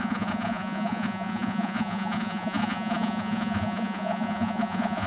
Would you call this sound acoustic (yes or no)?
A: no